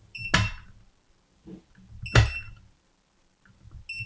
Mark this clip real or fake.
real